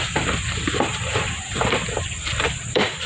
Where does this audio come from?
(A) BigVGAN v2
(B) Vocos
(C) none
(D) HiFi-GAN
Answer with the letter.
A